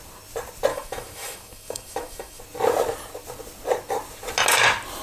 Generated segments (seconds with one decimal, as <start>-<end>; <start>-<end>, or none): 0.7-2.4